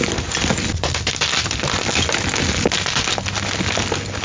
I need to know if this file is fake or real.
real